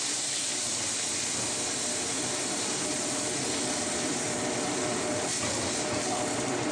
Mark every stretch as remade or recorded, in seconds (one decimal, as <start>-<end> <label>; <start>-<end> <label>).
0.0-0.7 remade; 0.7-2.4 recorded; 2.4-6.7 remade